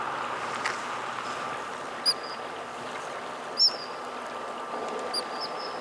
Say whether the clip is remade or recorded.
recorded